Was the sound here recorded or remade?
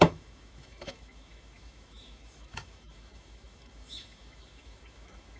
remade